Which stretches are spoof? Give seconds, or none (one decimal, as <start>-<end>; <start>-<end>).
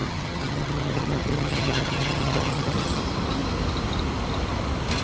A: 0.0-3.0